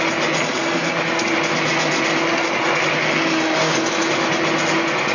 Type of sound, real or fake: real